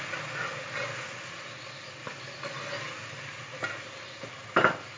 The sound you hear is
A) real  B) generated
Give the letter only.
A